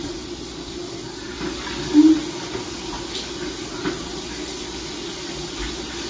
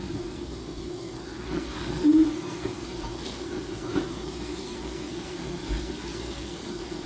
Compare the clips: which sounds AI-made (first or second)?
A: second